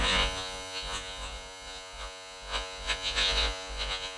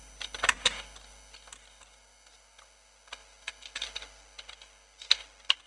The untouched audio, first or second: second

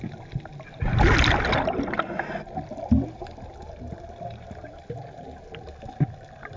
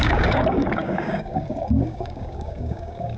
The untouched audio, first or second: first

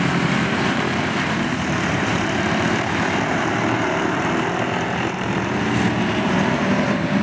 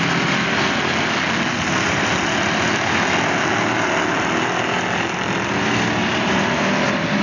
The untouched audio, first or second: second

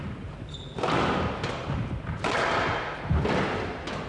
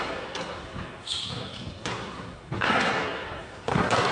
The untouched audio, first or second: first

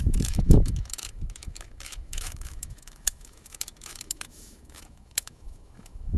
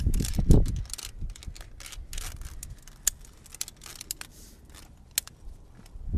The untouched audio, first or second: second